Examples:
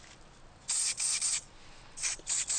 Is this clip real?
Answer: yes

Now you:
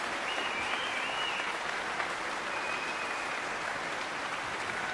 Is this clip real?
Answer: yes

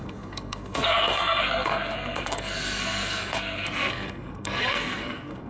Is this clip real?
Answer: no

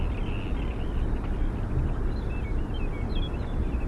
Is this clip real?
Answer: yes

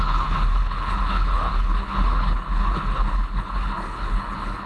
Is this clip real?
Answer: no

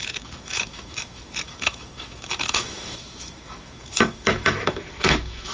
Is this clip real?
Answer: no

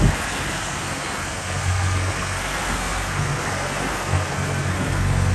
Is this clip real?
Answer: no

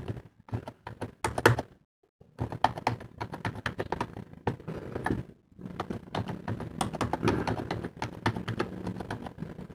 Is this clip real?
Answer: yes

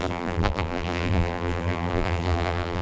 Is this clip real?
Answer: no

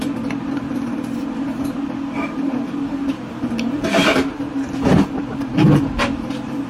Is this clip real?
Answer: no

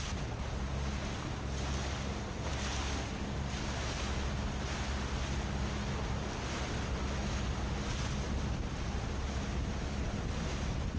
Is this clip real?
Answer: yes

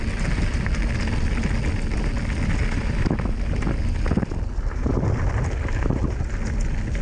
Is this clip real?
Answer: yes